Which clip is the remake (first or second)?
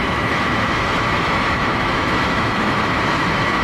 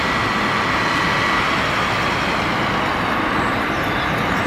first